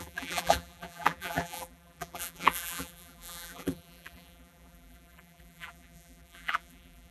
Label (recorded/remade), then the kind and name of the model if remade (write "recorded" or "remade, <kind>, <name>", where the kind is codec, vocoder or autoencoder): remade, vocoder, BigVGAN v2